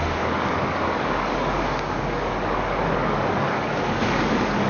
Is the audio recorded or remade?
remade